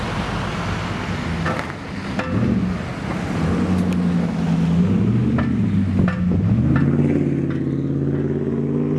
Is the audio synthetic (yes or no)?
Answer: no